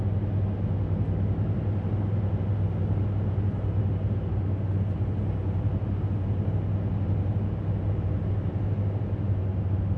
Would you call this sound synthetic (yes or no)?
no